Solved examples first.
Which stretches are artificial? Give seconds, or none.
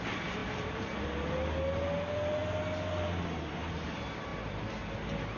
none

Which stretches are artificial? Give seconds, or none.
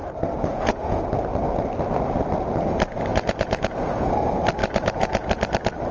0.5-1.0 (vocoder, Vocos); 3.1-4.1; 4.6-5.3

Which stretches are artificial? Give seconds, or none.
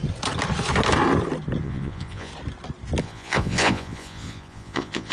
1.6-2.3 (vocoder, Vocos); 3.0-5.1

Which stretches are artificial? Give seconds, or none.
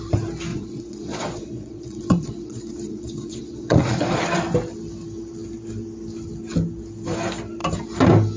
0.5-4.2 (vocoder, Vocos)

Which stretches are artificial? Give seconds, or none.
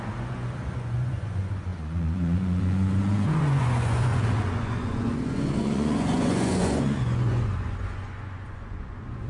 0.0-9.3 (vocoder, Vocos)